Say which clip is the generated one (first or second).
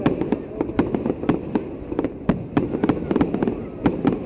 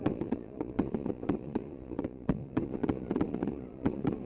second